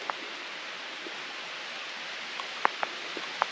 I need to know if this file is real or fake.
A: real